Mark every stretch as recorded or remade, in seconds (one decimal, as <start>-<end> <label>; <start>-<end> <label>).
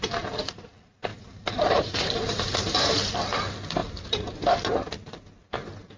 0.0-1.1 recorded; 1.1-3.1 remade; 3.1-3.8 recorded; 3.8-4.4 remade; 4.4-6.0 recorded